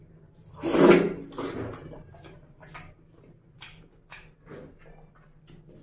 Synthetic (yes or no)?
no